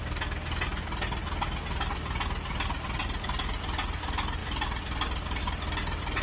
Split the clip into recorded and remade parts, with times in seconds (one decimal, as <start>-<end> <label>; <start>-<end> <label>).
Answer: 0.0-6.2 recorded